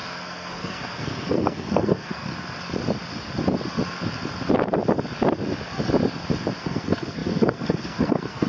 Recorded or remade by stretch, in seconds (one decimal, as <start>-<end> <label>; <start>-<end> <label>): 0.0-2.3 remade; 2.3-6.6 recorded; 6.6-8.5 remade